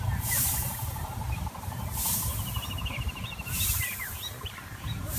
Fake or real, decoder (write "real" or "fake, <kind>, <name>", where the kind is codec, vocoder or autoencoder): fake, vocoder, BigVGAN v2